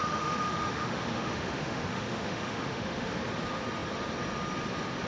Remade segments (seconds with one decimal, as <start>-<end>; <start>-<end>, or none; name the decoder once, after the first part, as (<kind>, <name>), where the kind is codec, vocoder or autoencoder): 0.0-3.1 (autoencoder, DAC-VAE)